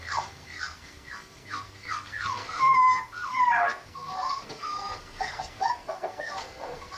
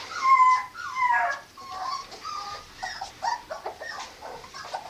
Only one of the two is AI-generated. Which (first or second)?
first